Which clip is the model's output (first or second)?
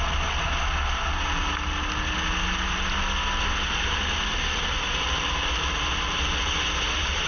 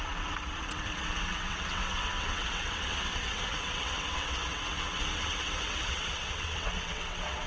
second